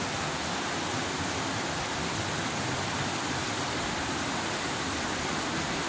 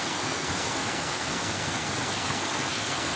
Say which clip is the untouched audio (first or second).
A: first